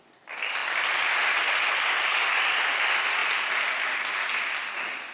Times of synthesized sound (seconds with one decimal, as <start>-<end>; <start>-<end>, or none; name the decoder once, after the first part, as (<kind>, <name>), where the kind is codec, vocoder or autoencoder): none